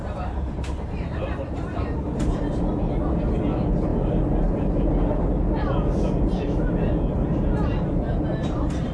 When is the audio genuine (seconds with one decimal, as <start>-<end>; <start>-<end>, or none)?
2.6-7.7